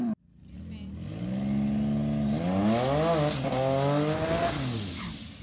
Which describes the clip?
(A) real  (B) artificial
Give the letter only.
A